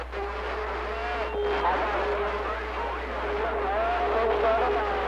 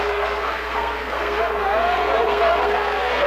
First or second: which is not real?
second